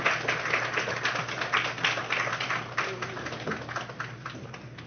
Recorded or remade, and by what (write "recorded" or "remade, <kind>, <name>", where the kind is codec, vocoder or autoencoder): recorded